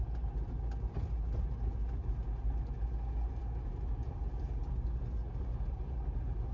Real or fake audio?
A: real